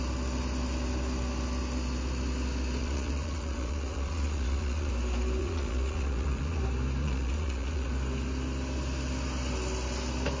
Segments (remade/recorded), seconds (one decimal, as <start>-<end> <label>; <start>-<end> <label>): 0.0-2.8 recorded; 2.8-4.9 remade; 4.9-5.4 recorded; 5.4-6.6 remade; 6.6-7.0 recorded; 7.0-7.9 remade; 7.9-10.4 recorded